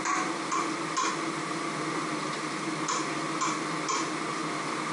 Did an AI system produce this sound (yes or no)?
no